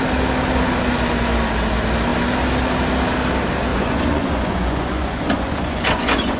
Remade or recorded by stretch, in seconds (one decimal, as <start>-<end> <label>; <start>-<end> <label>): 0.0-3.7 recorded; 3.7-6.4 remade